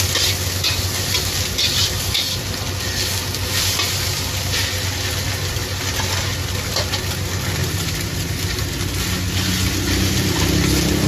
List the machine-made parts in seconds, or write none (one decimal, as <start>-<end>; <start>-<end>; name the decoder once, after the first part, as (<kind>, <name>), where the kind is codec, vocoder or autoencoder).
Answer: 7.6-8.7 (vocoder, BigVGAN v2)